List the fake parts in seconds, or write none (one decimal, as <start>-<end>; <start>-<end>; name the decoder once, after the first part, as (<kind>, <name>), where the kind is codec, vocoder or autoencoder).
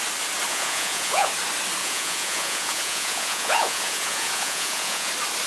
0.5-1.3 (vocoder, Vocos); 1.8-5.1